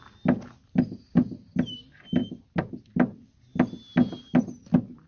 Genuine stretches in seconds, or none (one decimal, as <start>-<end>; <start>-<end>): 0.0-5.1